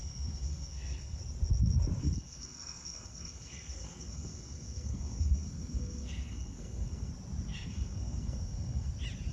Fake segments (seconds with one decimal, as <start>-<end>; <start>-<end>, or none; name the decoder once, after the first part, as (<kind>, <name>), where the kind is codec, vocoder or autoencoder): 0.0-1.2 (codec, SNAC); 2.0-7.1; 7.5-8.9